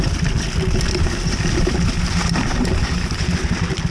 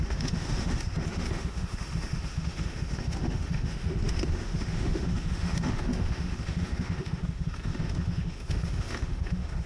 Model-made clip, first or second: second